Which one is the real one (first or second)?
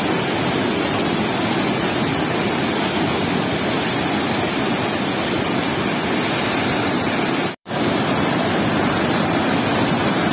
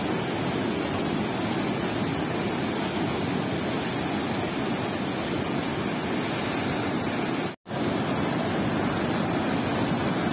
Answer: second